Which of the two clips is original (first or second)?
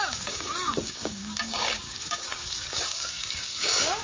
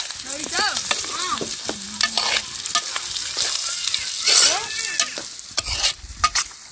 second